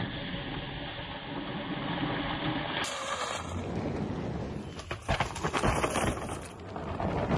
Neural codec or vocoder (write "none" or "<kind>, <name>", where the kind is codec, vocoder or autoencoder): none